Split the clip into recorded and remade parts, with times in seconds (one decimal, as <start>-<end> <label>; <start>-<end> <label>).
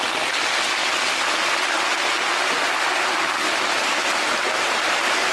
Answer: 0.0-5.3 recorded